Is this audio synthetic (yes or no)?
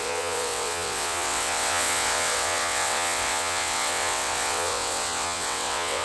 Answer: yes